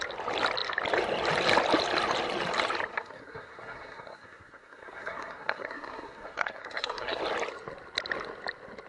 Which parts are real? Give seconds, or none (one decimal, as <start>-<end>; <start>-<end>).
0.0-2.9; 7.2-8.9